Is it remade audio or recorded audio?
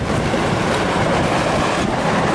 recorded